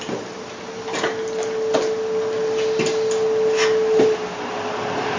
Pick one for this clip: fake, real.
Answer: real